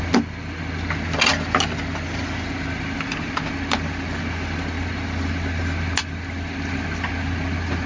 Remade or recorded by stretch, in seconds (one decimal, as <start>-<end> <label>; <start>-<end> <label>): 0.0-7.9 recorded